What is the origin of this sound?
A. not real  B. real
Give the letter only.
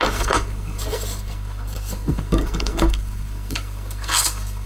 A